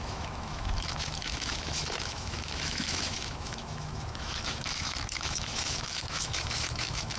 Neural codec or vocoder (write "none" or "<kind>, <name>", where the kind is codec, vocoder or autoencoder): autoencoder, DAC-VAE